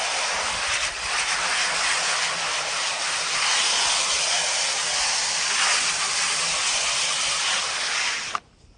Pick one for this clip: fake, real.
real